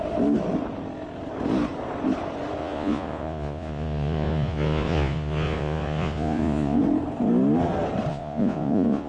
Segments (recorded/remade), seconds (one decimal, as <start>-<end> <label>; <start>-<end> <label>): 0.0-2.6 recorded; 2.6-6.8 remade; 6.8-8.1 recorded; 8.1-9.1 remade